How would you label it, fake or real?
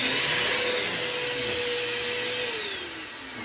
real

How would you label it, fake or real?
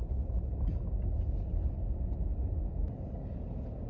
real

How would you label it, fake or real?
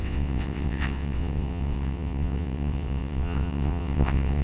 fake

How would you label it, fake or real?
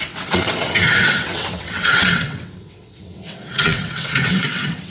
fake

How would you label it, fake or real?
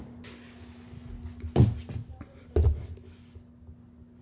real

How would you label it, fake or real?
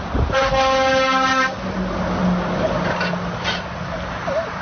real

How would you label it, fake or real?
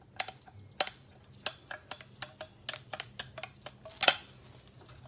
real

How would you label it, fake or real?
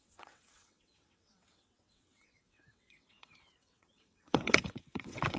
fake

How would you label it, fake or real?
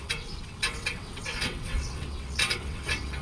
fake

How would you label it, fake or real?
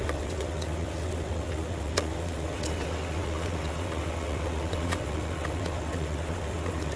fake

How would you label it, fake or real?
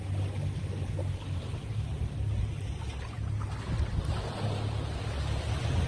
real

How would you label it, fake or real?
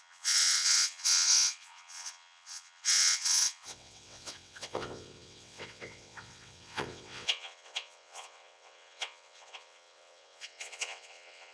fake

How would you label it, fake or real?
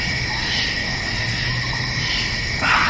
real